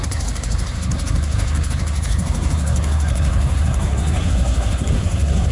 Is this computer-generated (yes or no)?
yes